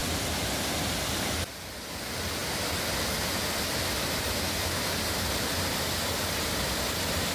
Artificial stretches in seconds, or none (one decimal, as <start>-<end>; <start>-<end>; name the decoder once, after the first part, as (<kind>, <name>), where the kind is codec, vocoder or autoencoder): none